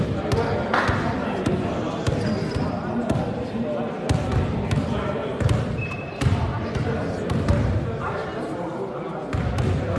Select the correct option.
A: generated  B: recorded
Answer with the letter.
B